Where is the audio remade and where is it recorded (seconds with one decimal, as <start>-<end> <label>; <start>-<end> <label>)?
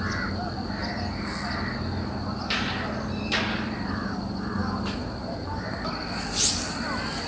0.0-7.3 recorded